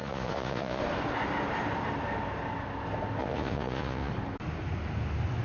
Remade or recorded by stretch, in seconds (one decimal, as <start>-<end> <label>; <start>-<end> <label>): 0.0-0.8 remade; 0.8-3.2 recorded; 3.2-4.1 remade; 4.1-5.4 recorded